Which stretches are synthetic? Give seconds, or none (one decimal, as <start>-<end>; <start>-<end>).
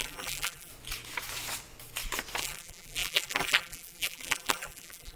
0.0-0.7; 2.4-5.2